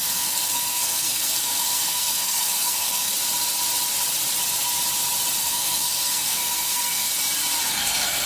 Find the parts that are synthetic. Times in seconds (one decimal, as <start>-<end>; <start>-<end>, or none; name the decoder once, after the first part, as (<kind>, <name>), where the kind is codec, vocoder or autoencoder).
0.0-3.1 (codec, SNAC); 5.4-7.1; 7.7-8.3